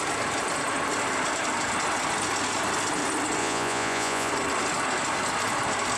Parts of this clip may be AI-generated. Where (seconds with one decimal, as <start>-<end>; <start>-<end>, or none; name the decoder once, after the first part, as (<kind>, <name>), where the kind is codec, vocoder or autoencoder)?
3.4-4.3 (vocoder, Vocos)